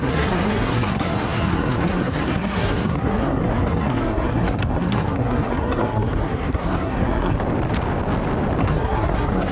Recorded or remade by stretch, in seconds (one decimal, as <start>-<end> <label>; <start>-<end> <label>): 0.0-7.4 remade; 7.4-8.6 recorded; 8.6-9.5 remade